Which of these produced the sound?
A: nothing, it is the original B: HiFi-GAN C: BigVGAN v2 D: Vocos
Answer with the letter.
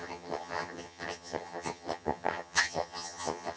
B